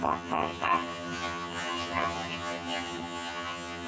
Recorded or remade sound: remade